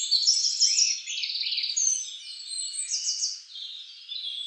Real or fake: real